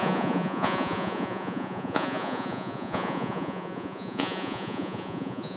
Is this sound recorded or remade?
remade